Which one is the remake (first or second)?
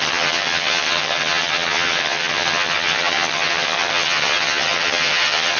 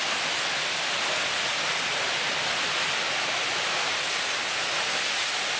first